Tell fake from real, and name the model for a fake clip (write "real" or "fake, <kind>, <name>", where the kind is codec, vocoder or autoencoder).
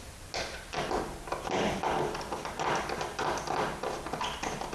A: real